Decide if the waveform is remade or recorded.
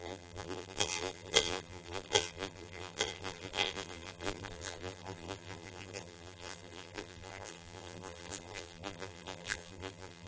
remade